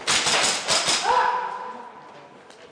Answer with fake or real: real